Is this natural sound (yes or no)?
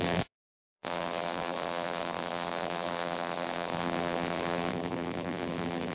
no